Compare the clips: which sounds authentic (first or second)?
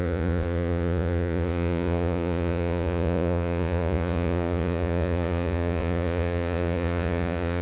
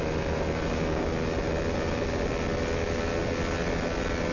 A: second